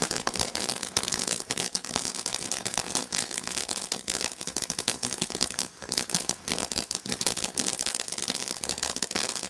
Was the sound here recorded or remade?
remade